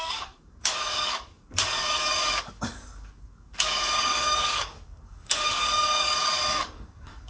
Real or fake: fake